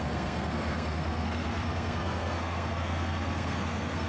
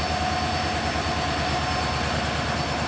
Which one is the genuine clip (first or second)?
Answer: second